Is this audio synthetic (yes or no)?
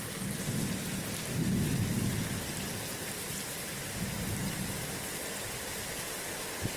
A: no